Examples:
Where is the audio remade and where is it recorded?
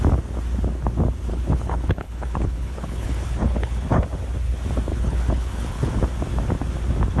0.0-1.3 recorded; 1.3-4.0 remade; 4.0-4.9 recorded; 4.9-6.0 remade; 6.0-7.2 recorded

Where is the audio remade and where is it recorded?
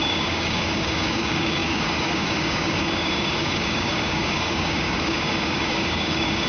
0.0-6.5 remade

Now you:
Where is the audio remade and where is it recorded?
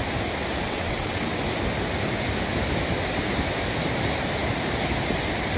0.0-0.6 recorded; 0.6-1.4 remade; 1.4-5.6 recorded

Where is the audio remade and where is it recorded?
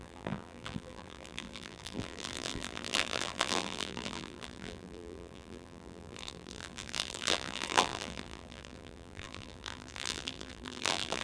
0.0-11.2 remade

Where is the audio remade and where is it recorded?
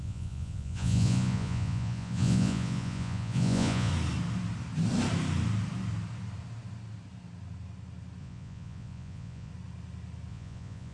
0.0-3.9 remade; 3.9-8.2 recorded; 8.2-9.5 remade; 9.5-10.3 recorded; 10.3-10.9 remade